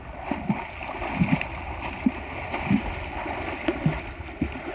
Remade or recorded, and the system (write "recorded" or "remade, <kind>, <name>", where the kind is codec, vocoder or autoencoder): recorded